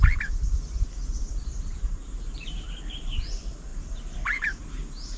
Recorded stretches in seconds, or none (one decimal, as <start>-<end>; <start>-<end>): 0.0-1.5; 2.7-3.7; 4.6-5.2